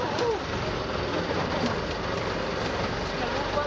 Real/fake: fake